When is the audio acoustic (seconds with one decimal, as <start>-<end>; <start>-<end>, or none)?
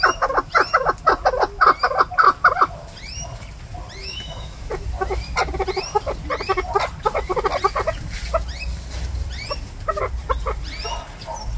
0.0-4.0; 4.7-11.6